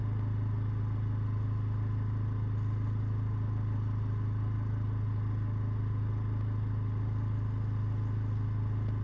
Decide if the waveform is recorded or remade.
recorded